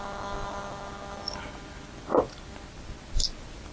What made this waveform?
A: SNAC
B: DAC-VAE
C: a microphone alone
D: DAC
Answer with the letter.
C